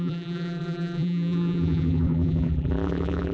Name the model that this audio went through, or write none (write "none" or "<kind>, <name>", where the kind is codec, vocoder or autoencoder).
vocoder, BigVGAN v2